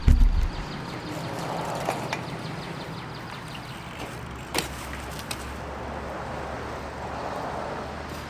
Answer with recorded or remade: recorded